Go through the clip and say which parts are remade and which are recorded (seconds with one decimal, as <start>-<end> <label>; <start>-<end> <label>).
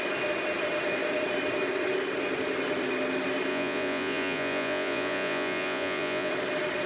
0.0-3.5 recorded; 3.5-6.3 remade; 6.3-6.9 recorded